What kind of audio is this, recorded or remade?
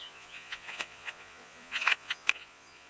remade